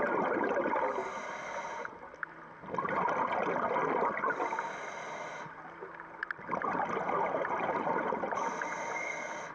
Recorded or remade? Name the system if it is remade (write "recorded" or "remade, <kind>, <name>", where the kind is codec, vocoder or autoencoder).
recorded